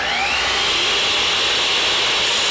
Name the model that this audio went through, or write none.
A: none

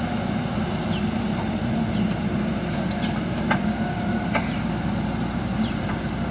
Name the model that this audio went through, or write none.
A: none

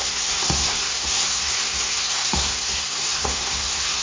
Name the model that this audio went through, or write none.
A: codec, SNAC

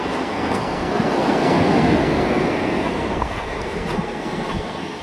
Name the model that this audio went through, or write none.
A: codec, SNAC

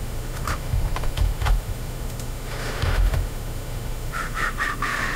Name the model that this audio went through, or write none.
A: autoencoder, DAC-VAE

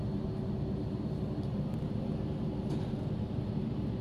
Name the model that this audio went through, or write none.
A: none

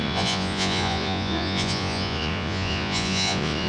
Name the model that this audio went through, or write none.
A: vocoder, Vocos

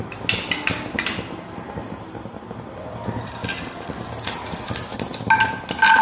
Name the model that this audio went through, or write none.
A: none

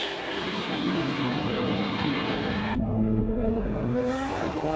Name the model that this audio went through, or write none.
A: codec, SNAC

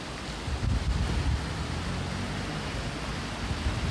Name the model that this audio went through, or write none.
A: none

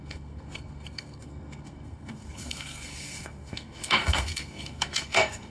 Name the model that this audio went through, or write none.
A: codec, SNAC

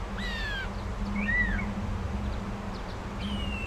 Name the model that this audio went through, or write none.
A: none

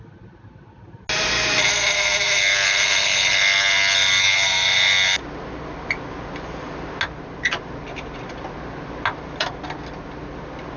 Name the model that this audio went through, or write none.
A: none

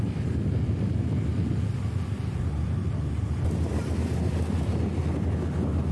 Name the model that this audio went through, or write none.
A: none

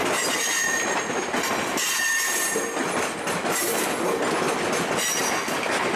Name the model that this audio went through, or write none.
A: none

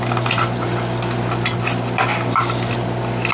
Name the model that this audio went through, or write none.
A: none